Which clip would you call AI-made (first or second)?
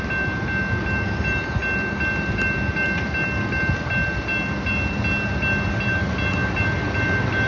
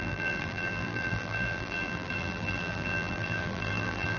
second